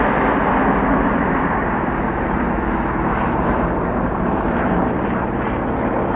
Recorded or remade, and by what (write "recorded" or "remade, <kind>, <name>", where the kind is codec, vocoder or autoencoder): recorded